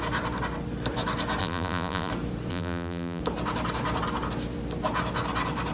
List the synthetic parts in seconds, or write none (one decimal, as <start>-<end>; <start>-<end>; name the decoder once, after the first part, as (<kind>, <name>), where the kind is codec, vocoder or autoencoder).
1.4-2.1 (vocoder, BigVGAN v2); 2.5-3.2